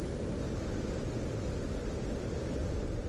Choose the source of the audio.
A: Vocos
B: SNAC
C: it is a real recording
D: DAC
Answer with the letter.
C